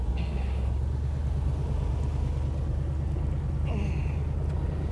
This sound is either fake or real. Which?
real